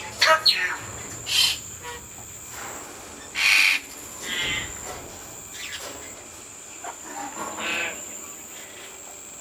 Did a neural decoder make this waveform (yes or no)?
no